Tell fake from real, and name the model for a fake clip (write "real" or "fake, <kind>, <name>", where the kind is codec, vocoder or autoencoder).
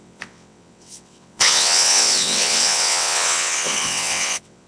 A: fake, vocoder, WaveNeXt